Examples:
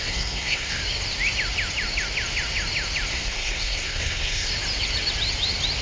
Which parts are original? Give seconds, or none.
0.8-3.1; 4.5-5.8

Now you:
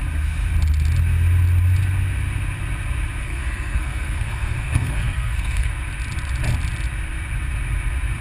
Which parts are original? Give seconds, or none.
0.0-3.2; 5.7-8.2

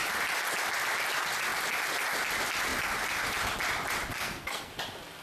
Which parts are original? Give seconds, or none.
0.0-4.1; 4.7-5.2

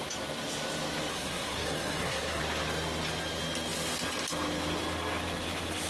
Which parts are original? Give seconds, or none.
0.0-1.1; 2.4-5.9